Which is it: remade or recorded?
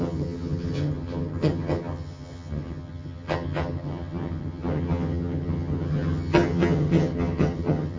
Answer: remade